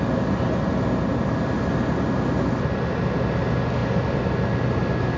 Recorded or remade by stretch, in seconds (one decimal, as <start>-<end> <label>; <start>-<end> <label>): 0.0-5.2 recorded